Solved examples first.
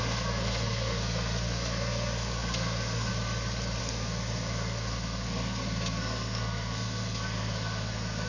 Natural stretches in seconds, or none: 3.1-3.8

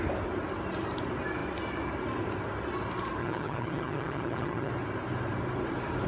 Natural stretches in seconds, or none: 0.0-3.2; 4.7-6.1

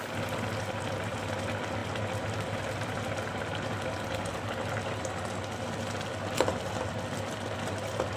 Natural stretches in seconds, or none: 0.0-8.2

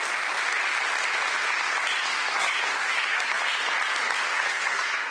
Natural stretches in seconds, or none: 0.0-2.1; 3.4-4.3

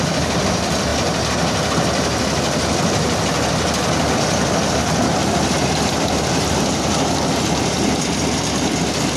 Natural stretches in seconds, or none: 0.9-4.1

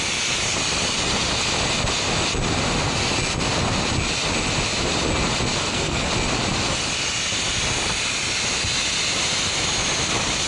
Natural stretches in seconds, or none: 0.0-5.6; 6.1-10.5

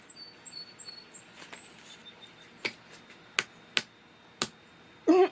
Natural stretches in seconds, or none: 0.0-5.3

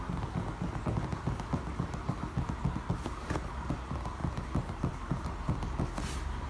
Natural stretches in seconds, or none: 0.0-6.5